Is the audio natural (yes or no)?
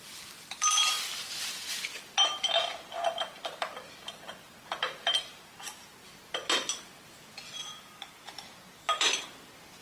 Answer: yes